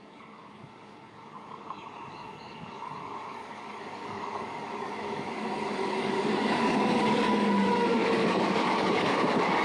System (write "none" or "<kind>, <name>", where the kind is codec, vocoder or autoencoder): codec, DAC